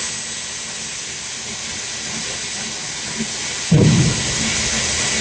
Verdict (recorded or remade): recorded